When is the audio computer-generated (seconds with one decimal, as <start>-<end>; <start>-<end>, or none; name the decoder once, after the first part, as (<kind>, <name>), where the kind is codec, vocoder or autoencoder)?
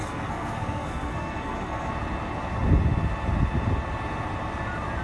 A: 0.0-1.9 (codec, SNAC)